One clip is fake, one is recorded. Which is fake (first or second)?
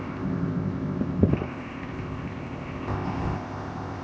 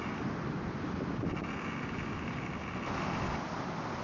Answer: first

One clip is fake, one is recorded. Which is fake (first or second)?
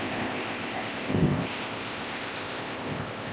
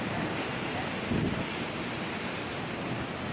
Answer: first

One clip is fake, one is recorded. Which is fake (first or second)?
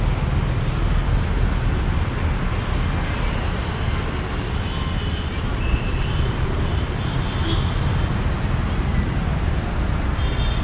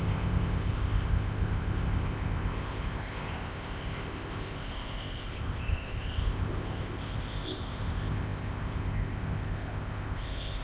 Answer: second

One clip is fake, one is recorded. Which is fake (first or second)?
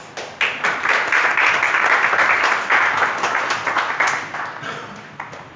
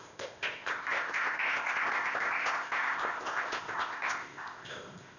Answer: second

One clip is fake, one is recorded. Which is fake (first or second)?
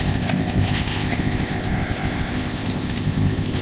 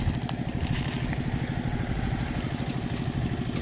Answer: first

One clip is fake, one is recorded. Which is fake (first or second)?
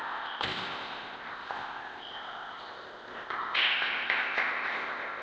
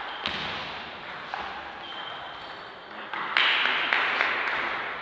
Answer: first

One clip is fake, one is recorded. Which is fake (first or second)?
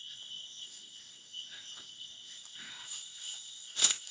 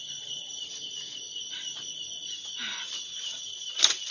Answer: first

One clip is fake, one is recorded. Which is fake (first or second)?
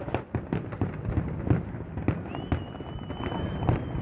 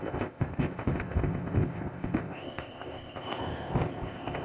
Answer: second